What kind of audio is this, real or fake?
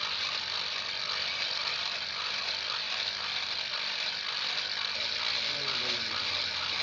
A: real